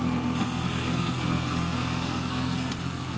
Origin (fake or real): fake